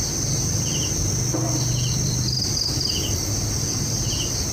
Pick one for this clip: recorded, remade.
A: recorded